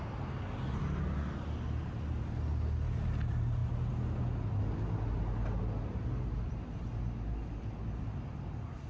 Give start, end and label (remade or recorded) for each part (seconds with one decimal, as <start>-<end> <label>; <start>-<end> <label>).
0.0-8.9 recorded